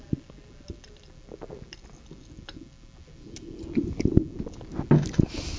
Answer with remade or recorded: recorded